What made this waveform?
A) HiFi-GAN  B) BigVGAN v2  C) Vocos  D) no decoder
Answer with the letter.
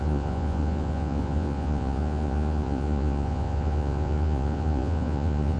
C